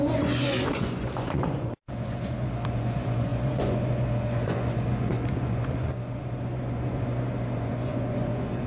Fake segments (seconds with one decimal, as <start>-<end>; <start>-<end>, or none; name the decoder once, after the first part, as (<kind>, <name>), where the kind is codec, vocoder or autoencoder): 0.0-8.7 (vocoder, Vocos)